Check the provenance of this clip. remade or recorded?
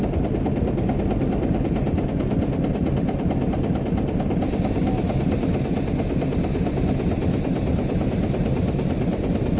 recorded